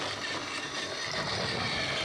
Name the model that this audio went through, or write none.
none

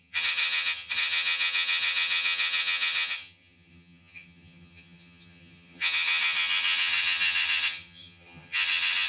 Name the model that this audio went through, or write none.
vocoder, HiFi-GAN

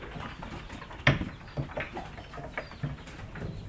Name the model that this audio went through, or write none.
none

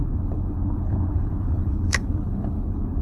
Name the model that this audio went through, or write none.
codec, HILCodec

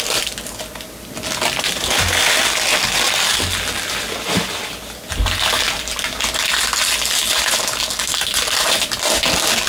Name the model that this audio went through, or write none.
none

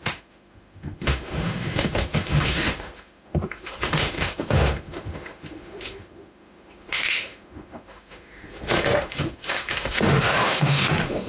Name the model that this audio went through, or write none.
autoencoder, DAC-VAE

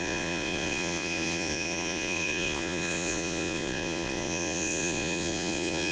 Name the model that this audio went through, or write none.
vocoder, Vocos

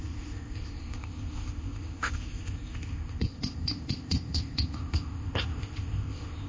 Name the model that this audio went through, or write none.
codec, ZipCodec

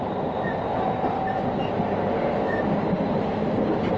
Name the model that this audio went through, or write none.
none